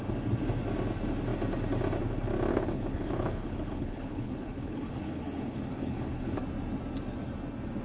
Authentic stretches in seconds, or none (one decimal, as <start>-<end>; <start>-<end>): 0.0-2.5; 6.4-7.8